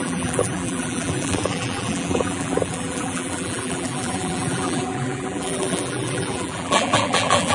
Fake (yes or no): yes